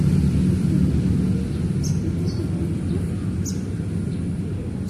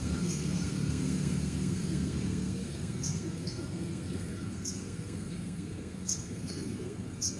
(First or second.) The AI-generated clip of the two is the second